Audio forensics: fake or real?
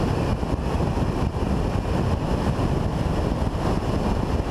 real